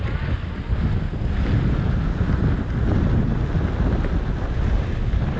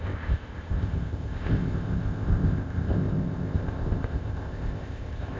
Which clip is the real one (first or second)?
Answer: first